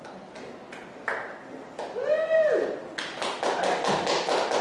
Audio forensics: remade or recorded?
recorded